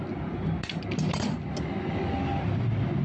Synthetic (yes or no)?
no